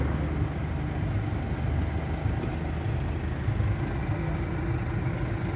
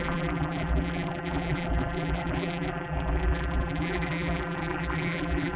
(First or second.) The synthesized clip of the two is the second